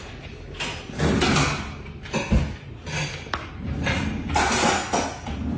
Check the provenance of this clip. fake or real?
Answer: real